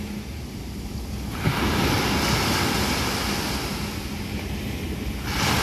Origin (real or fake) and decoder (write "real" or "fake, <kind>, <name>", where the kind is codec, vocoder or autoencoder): real